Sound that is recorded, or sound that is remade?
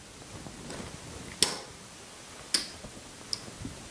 recorded